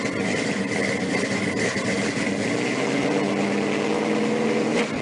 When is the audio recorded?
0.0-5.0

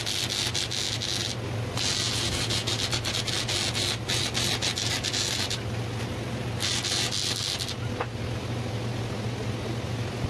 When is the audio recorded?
0.0-10.3

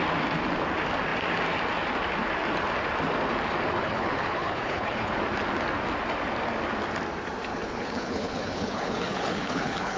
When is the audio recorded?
0.0-3.8; 5.1-7.5

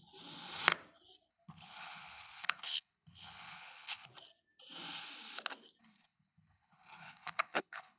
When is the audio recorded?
0.0-1.3; 4.1-5.8